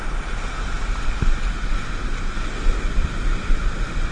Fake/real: real